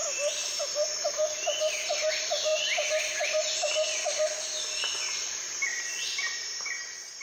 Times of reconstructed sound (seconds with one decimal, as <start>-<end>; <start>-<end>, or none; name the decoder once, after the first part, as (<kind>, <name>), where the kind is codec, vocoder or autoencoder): 5.7-6.6 (vocoder, BigVGAN v2)